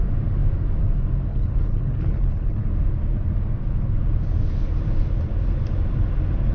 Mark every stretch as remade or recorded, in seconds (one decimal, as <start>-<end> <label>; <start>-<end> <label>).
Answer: 0.0-1.3 recorded; 1.3-2.6 remade; 2.6-6.5 recorded